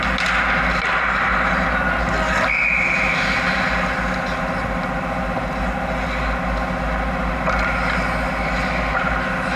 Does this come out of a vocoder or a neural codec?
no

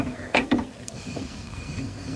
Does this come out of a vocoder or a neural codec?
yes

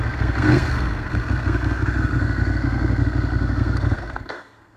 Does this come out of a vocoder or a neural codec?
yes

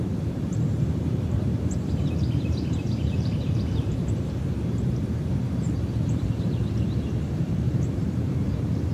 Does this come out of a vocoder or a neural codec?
yes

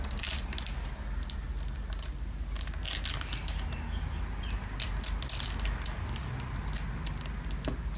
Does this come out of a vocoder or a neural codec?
no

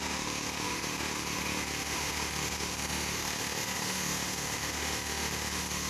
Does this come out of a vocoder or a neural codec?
yes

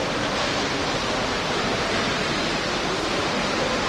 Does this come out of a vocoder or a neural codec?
no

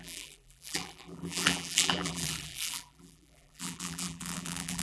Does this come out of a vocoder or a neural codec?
yes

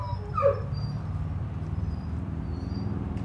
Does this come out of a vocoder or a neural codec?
no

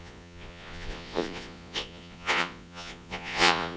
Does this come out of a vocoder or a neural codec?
yes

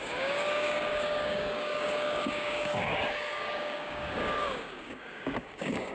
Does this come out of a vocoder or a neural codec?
yes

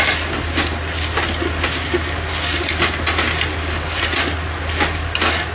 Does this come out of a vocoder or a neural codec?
no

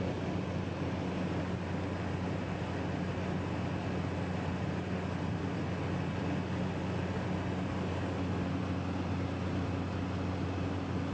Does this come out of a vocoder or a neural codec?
no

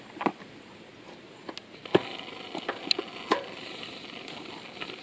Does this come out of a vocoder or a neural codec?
no